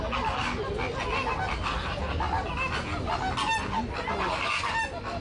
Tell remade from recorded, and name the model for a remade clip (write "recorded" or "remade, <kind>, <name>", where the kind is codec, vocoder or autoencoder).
recorded